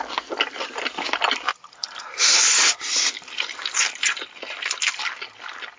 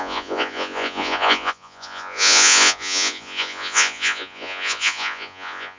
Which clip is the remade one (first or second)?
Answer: second